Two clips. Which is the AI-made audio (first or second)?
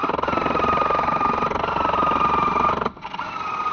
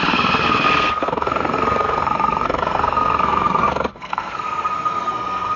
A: second